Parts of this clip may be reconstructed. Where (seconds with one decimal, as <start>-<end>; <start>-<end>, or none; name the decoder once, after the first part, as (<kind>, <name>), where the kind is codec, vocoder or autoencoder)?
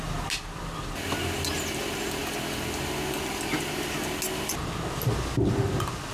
none